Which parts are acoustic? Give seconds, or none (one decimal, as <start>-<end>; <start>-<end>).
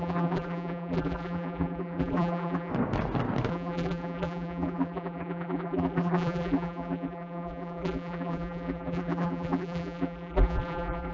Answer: 2.7-3.5